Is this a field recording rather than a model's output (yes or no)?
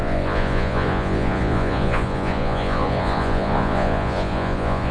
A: no